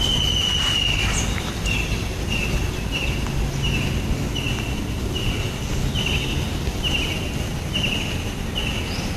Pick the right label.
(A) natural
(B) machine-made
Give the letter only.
A